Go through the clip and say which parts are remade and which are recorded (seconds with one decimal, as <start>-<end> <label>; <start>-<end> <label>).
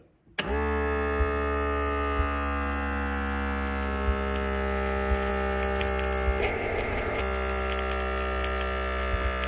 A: 0.0-6.4 recorded; 6.4-7.2 remade; 7.2-9.5 recorded